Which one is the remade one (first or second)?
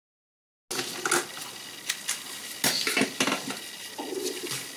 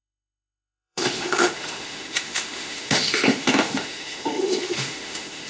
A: second